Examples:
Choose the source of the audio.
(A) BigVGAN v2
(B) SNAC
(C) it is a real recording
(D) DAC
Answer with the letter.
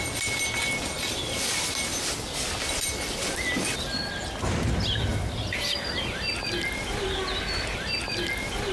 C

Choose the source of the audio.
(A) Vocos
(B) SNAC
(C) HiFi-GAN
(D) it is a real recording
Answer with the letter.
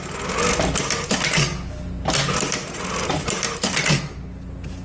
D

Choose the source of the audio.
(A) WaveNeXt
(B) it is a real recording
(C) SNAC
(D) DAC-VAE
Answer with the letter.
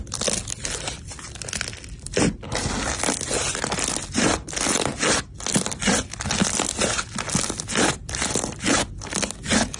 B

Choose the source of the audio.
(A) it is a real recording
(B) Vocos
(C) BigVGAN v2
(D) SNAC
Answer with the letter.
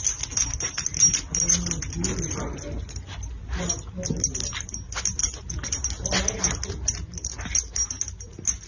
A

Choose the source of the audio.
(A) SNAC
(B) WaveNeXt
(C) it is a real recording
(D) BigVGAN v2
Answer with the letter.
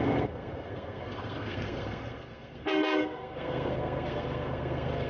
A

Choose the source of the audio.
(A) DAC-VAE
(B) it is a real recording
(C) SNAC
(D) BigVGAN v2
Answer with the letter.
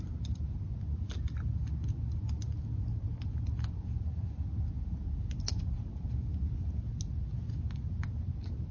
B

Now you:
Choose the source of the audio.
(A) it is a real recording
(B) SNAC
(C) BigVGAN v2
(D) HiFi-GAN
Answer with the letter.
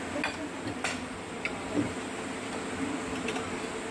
A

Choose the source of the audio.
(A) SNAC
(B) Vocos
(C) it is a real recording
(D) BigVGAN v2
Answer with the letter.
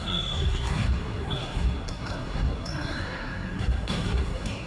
A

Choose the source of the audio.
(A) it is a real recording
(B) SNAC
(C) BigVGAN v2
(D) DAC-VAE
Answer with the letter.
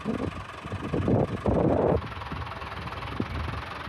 A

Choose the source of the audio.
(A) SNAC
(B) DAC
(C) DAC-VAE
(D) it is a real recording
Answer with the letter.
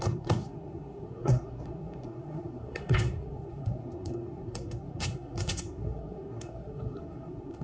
A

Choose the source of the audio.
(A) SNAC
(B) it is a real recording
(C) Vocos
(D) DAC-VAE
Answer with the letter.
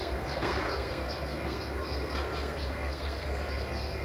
A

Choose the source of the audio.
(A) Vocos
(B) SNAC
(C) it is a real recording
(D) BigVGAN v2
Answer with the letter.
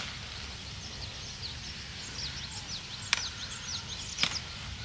C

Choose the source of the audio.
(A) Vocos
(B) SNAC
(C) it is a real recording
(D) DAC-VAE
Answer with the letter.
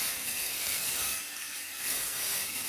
B